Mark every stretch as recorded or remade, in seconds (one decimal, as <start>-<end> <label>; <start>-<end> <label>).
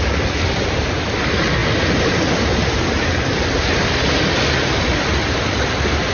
0.0-6.1 recorded